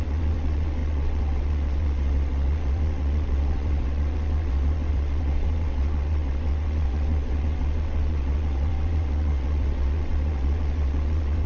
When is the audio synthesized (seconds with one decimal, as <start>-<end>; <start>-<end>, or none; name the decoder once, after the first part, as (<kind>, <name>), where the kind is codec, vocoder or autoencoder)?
0.0-11.5 (vocoder, WaveNeXt)